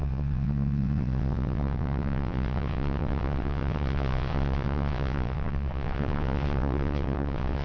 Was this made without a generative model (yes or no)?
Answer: no